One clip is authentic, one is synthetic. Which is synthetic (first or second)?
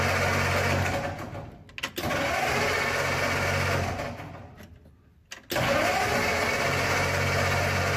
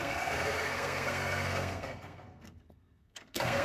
second